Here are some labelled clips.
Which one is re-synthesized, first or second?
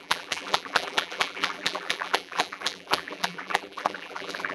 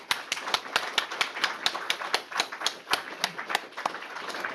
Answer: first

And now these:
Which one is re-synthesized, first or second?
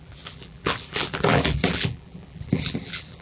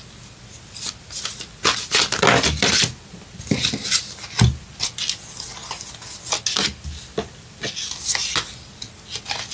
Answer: first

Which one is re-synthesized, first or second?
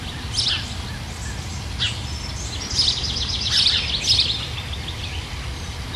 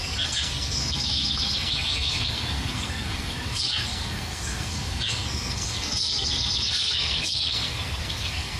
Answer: second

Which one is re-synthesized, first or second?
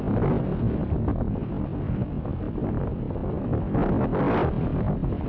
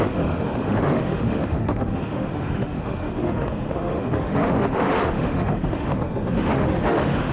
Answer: second